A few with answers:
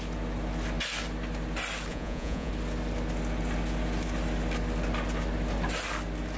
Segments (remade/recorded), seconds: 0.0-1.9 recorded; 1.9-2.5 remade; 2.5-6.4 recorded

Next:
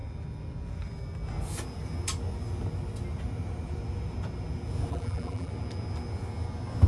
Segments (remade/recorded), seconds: 0.0-4.9 recorded; 4.9-5.5 remade; 5.5-6.9 recorded

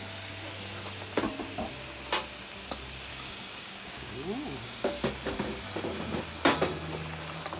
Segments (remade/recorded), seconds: 0.0-3.1 recorded; 3.1-5.0 remade; 5.0-7.6 recorded

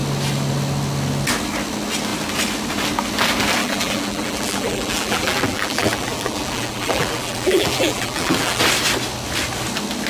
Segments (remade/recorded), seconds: 0.0-3.6 recorded; 3.6-8.6 remade; 8.6-10.1 recorded

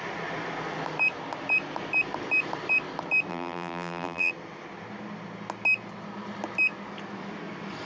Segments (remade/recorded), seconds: 0.0-3.3 recorded; 3.3-4.3 remade; 4.3-7.9 recorded

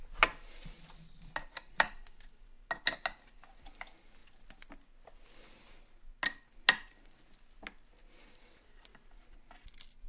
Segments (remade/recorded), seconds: 0.0-10.1 recorded

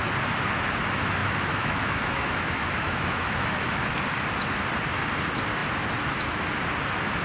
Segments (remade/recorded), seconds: 0.0-1.2 recorded; 1.2-3.9 remade; 3.9-7.2 recorded

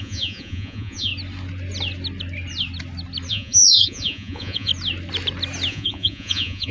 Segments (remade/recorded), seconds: 0.0-1.1 remade; 1.1-3.3 recorded; 3.3-4.7 remade; 4.7-5.7 recorded; 5.7-6.7 remade